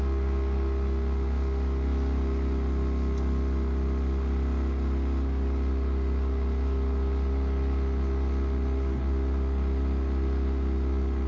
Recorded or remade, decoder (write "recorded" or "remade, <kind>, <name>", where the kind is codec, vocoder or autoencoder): recorded